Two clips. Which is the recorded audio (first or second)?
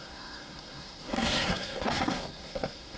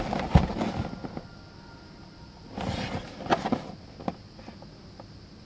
second